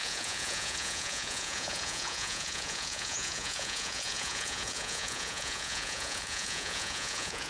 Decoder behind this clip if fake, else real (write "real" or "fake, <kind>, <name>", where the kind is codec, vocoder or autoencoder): fake, vocoder, Vocos